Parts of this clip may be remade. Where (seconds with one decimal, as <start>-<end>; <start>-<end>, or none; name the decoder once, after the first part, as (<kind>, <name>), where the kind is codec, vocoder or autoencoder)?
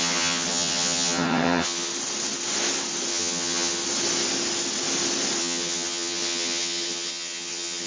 0.0-1.9 (vocoder, HiFi-GAN); 3.1-3.8; 5.4-7.9